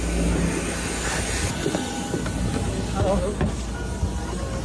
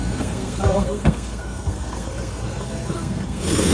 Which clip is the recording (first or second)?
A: first